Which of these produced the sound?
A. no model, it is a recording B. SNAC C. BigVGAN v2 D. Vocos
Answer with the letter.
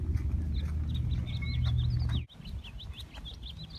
A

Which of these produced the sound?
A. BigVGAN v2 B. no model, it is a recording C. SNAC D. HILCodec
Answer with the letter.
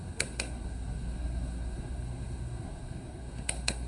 C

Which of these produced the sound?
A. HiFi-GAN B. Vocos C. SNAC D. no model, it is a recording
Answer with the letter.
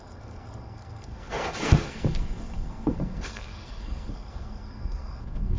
C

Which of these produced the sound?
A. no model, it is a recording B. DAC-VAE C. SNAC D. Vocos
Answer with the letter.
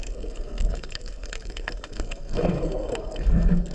C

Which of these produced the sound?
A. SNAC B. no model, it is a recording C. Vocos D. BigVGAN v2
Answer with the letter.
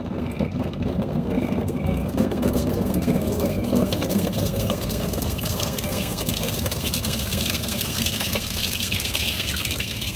A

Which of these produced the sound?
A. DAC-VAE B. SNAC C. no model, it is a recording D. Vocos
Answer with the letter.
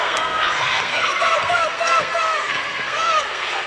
B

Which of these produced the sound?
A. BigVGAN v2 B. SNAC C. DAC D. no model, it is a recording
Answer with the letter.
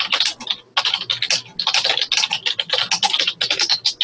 D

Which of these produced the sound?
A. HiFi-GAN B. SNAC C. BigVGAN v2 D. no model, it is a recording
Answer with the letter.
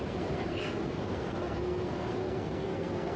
B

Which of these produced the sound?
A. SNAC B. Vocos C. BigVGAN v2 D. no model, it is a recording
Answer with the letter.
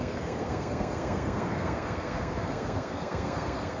A